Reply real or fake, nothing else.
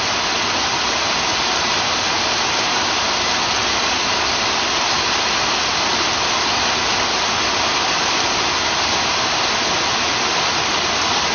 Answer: real